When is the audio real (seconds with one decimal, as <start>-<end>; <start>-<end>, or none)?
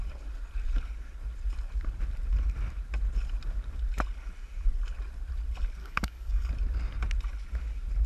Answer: 0.0-5.8; 6.5-8.1